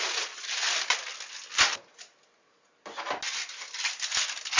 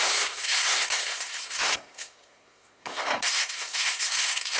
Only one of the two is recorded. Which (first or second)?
first